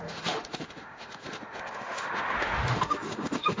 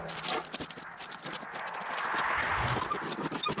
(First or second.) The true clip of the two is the second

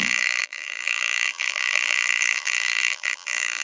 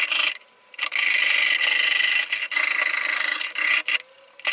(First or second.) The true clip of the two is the second